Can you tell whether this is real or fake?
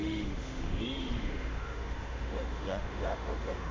fake